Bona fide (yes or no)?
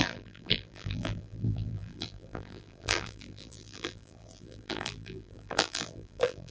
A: no